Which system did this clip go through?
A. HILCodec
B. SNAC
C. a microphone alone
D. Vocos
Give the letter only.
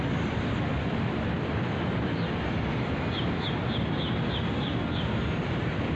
C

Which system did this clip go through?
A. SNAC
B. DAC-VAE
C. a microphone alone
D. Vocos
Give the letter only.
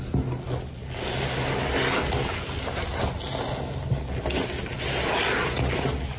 C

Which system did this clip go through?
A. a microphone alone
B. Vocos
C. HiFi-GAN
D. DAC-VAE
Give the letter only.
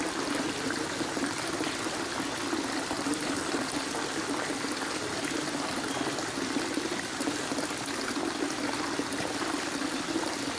A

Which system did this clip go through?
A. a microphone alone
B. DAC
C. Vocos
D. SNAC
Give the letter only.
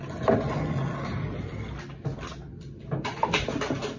A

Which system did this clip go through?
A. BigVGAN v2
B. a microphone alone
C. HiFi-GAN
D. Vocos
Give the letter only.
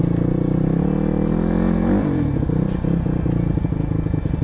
B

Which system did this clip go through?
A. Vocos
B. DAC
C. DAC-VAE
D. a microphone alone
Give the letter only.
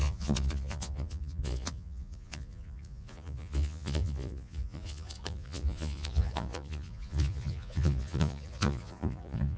A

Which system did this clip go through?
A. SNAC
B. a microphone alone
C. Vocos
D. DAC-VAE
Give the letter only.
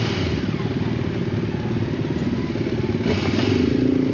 B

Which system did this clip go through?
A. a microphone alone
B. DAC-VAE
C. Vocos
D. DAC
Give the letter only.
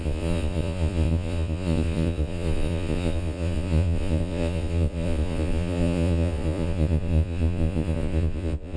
C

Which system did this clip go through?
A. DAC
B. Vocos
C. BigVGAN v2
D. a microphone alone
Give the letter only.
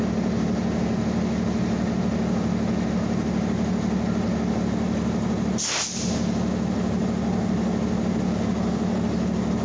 D